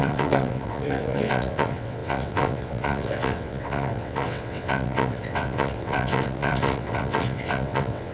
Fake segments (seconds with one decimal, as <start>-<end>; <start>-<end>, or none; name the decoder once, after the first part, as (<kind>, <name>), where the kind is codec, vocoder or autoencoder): 0.0-8.1 (vocoder, WaveNeXt)